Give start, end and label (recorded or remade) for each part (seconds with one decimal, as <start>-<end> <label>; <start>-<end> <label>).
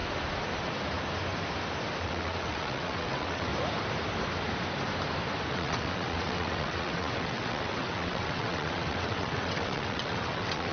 0.0-2.0 recorded; 2.0-3.5 remade; 3.5-5.5 recorded; 5.5-10.7 remade